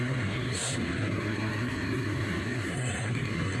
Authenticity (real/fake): fake